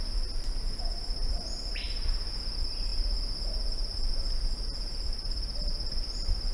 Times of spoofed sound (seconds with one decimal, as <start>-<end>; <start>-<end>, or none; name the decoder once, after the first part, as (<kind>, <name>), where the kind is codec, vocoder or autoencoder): none